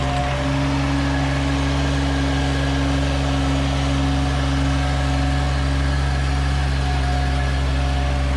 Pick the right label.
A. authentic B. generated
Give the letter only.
A